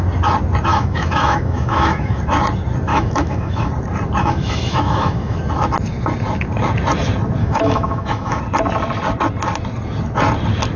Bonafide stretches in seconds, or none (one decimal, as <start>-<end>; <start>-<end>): 0.0-0.7; 2.2-2.9; 3.7-4.2; 5.4-7.4; 8.4-10.8